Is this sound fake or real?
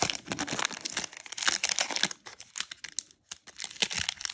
real